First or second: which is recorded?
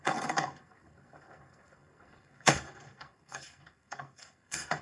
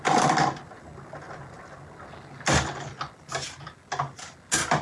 second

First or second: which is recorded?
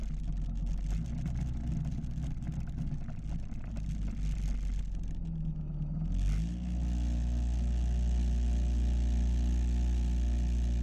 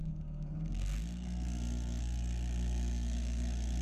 first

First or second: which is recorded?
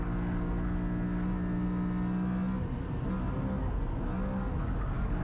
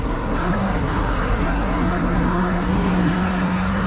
first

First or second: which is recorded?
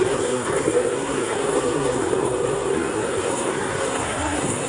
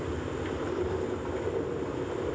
second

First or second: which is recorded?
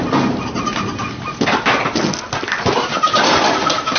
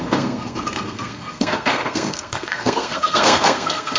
first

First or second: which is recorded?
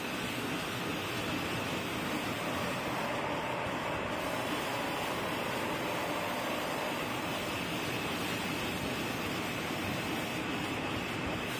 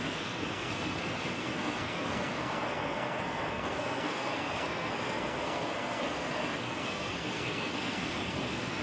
first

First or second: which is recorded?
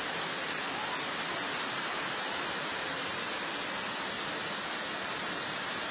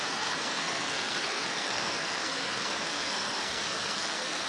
first